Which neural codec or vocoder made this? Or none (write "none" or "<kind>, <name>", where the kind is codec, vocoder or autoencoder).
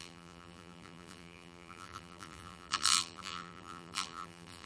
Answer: vocoder, BigVGAN v2